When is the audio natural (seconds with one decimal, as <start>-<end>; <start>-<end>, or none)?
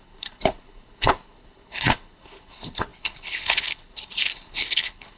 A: none